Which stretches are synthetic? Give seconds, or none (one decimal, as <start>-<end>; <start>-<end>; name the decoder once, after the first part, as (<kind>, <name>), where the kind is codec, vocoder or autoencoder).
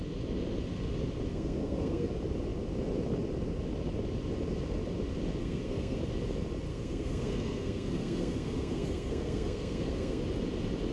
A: 1.3-2.1 (codec, SNAC); 5.4-6.0; 6.7-10.2